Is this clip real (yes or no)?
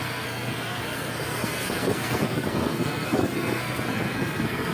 no